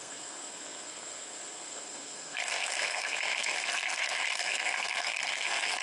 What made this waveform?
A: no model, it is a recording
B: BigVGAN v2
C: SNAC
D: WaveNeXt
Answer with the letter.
C